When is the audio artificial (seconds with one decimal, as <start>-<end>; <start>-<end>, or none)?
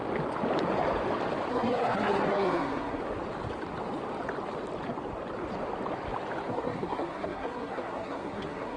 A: 1.5-3.0; 6.5-8.8